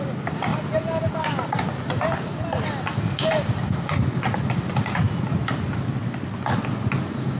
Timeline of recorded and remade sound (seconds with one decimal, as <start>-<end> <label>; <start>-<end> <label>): 0.0-7.4 recorded